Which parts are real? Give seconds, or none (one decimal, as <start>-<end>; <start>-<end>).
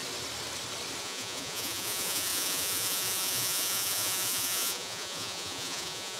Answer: 0.0-1.0